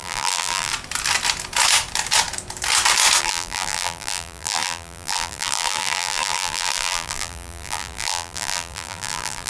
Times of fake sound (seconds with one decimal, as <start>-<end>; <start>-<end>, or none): 0.0-0.7; 3.2-9.5

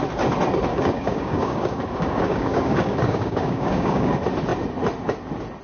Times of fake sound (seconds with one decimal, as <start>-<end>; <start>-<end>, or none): 0.7-4.1

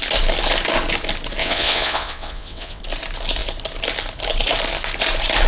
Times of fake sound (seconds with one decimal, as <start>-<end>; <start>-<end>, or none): 1.4-2.8

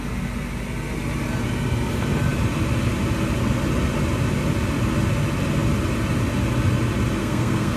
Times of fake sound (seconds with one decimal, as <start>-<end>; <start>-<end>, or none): 7.2-7.8

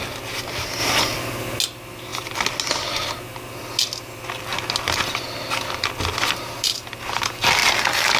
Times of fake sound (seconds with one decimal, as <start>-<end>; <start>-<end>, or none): none

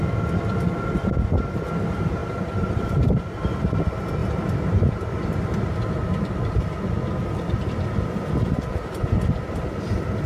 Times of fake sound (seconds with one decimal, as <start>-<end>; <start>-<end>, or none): 2.2-3.2; 4.2-5.4; 6.0-8.0

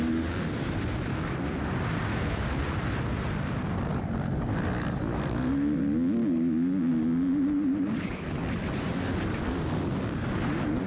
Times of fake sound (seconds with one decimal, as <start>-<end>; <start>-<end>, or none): none

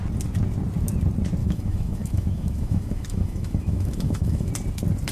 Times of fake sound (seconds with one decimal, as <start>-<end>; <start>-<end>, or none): 1.4-4.5